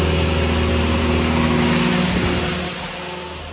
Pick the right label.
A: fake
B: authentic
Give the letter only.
B